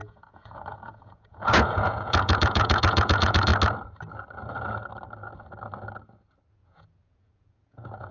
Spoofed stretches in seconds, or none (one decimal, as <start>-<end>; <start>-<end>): 0.0-3.5; 6.5-8.1